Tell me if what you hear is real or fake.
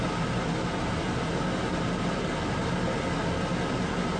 real